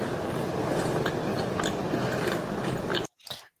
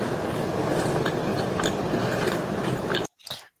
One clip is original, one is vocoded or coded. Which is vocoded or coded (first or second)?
second